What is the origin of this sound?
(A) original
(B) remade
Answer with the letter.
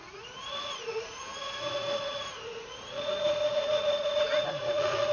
B